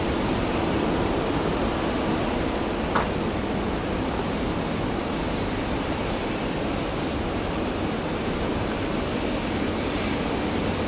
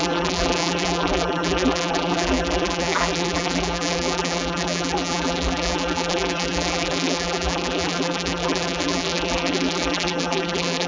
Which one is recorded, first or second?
first